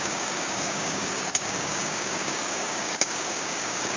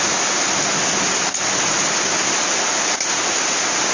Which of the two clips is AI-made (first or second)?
first